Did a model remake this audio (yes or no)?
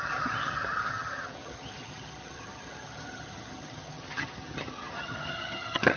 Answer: yes